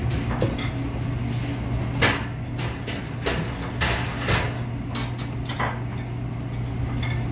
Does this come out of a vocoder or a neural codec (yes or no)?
no